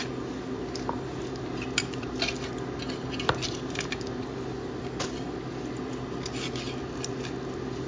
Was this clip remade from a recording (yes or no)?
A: no